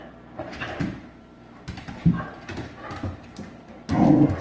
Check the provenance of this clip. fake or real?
real